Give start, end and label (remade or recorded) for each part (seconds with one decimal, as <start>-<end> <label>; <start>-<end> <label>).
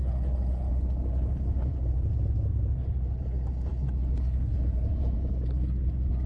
0.0-4.5 recorded; 4.5-5.3 remade; 5.3-6.3 recorded